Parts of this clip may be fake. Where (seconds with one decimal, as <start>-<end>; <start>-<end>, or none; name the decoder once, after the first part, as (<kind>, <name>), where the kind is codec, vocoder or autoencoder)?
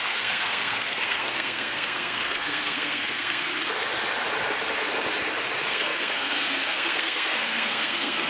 0.0-3.5 (codec, SNAC); 5.7-8.3